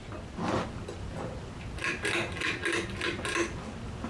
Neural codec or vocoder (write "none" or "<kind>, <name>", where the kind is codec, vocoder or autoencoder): none